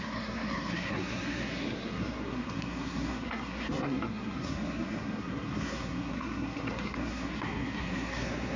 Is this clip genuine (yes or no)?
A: no